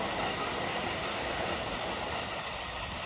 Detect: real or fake real